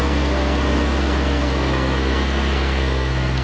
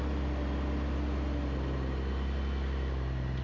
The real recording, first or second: second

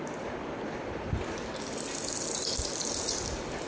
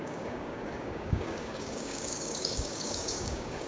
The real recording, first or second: first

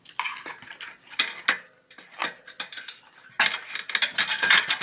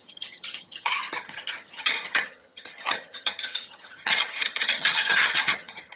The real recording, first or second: first